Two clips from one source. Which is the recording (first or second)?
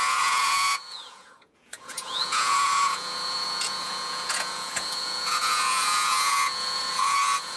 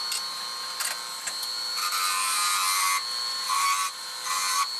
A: second